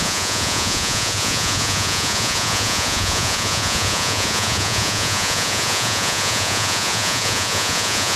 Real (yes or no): no